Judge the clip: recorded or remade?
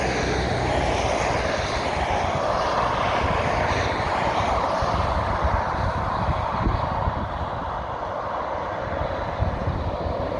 recorded